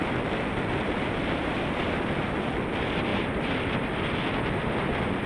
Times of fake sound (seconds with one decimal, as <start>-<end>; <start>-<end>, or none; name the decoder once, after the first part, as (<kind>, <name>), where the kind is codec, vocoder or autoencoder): 3.1-3.8 (vocoder, BigVGAN v2)